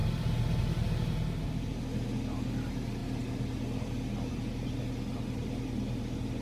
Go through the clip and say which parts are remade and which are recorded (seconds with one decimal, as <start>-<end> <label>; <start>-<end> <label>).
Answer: 0.0-6.4 recorded